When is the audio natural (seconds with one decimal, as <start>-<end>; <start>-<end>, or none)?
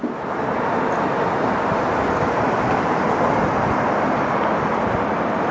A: 0.0-5.5